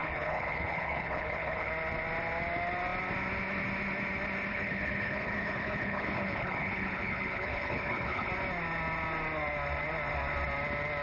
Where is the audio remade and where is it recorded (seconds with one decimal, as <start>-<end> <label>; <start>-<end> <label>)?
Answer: 0.0-1.7 remade; 1.7-4.5 recorded; 4.5-8.3 remade; 8.3-11.0 recorded